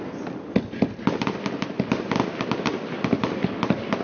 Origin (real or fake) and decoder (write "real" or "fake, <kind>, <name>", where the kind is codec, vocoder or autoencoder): real